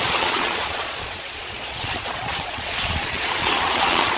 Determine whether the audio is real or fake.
fake